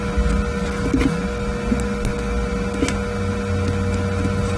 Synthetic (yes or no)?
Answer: no